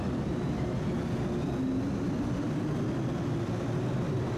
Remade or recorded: recorded